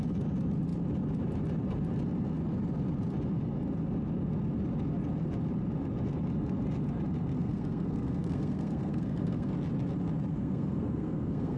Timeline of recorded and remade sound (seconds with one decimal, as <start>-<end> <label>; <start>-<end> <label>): 0.0-7.4 recorded; 7.4-9.5 remade; 9.5-10.3 recorded; 10.3-11.6 remade